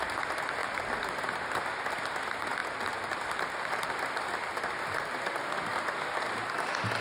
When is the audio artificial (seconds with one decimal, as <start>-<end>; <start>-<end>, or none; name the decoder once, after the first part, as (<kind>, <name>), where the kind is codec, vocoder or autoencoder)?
0.6-1.8 (vocoder, BigVGAN v2); 2.6-3.9